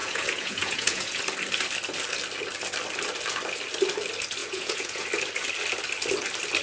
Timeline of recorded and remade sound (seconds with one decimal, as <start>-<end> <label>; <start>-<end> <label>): 0.0-1.2 remade; 1.2-4.4 recorded; 4.4-5.1 remade; 5.1-6.6 recorded